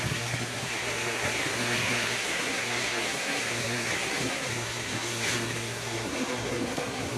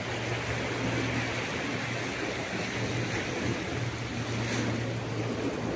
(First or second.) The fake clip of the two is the first